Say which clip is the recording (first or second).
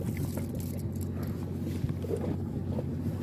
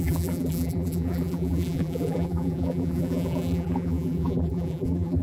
first